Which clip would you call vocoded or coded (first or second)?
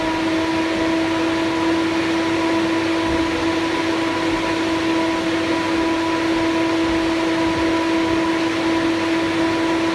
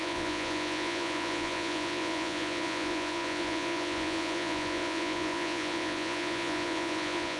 second